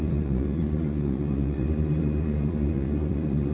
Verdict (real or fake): fake